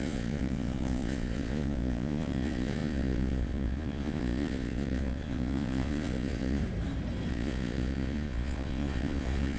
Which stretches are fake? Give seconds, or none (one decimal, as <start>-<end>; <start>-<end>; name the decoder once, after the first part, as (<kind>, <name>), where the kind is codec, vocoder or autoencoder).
0.0-6.6 (vocoder, Vocos); 7.3-9.6